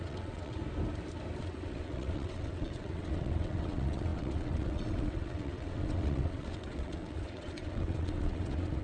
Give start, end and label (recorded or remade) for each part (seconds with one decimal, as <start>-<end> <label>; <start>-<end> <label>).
0.0-0.6 remade; 0.6-1.4 recorded; 1.4-8.8 remade

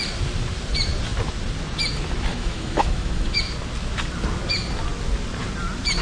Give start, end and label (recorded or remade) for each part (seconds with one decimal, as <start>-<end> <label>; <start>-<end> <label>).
0.0-2.3 recorded; 2.3-3.4 remade; 3.4-6.0 recorded

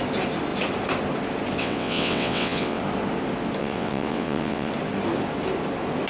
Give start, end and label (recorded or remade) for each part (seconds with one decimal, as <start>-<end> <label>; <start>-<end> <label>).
0.0-1.6 recorded; 1.6-2.8 remade; 2.8-3.6 recorded; 3.6-4.7 remade; 4.7-6.1 recorded

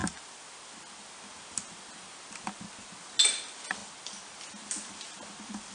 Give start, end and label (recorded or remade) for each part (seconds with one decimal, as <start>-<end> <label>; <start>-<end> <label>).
0.0-5.7 recorded

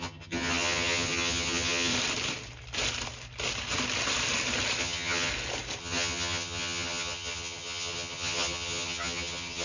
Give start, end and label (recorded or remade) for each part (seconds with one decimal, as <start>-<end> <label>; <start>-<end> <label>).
0.0-1.9 remade; 1.9-4.8 recorded; 4.8-5.3 remade; 5.3-5.8 recorded; 5.8-9.6 remade

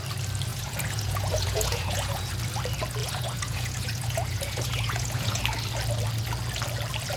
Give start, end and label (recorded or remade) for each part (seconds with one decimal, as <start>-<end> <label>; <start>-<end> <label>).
0.0-0.5 recorded; 0.5-2.3 remade; 2.3-3.0 recorded; 3.0-5.4 remade; 5.4-7.2 recorded

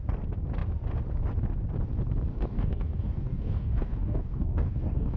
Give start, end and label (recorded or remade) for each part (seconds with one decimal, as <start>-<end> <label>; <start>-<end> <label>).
0.0-2.3 recorded; 2.3-5.2 remade

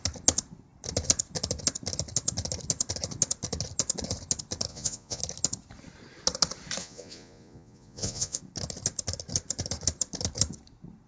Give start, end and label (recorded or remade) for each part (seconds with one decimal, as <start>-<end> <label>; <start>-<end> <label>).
0.0-4.7 recorded; 4.7-5.2 remade; 5.2-6.8 recorded; 6.8-8.4 remade; 8.4-11.1 recorded